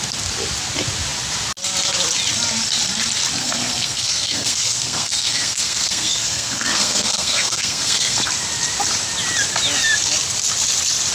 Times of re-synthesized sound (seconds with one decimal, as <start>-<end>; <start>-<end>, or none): 3.4-8.3